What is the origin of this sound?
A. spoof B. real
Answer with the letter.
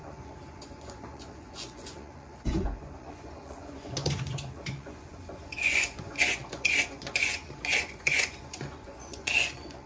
A